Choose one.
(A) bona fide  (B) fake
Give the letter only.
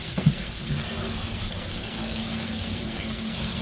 B